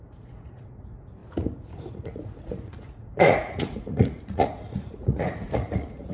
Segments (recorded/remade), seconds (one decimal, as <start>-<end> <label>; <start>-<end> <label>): 0.0-6.1 remade

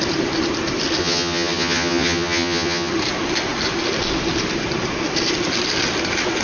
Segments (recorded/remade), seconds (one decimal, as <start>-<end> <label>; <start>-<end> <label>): 0.0-1.0 recorded; 1.0-2.9 remade; 2.9-6.4 recorded

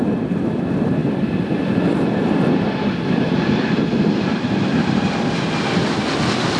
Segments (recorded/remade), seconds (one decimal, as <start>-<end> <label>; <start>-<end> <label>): 0.0-6.6 recorded

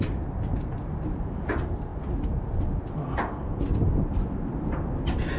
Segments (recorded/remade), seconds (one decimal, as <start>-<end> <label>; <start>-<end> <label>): 0.0-5.4 recorded

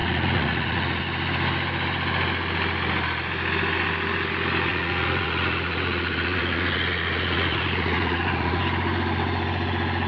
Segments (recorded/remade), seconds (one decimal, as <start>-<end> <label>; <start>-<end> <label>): 0.0-1.0 remade; 1.0-4.7 recorded; 4.7-8.6 remade; 8.6-10.1 recorded

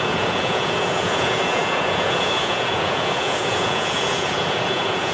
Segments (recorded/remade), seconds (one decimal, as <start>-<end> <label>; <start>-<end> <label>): 0.0-5.1 remade